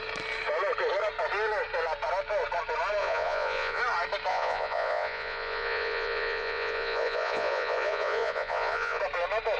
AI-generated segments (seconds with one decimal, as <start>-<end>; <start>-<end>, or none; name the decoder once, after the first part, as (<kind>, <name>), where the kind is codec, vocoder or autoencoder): 3.0-3.8 (vocoder, Vocos); 4.3-9.0